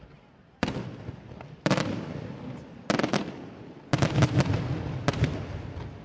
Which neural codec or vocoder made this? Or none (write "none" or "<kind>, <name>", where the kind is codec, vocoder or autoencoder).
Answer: none